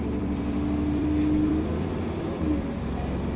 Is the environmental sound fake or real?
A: fake